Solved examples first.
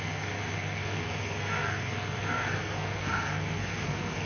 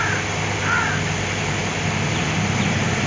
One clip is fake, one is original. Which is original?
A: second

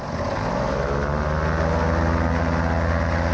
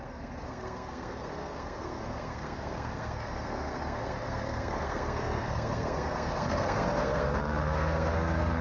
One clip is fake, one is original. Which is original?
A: first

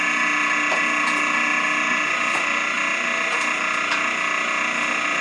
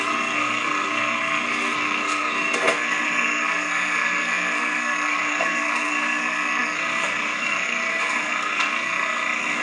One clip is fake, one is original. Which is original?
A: first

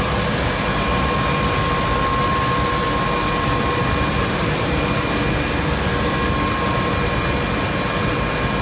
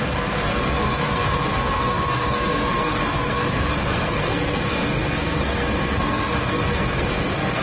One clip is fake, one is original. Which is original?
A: first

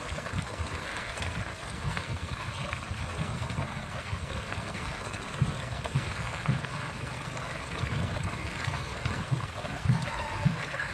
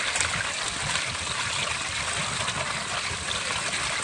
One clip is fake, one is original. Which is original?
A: second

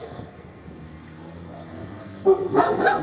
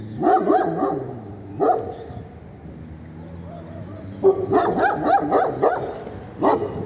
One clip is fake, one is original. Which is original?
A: second